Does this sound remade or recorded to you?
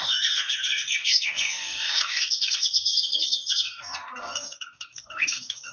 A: remade